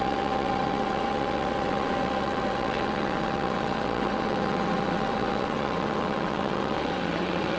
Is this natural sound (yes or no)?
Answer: no